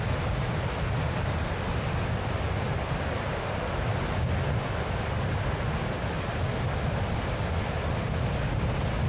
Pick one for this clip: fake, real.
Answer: real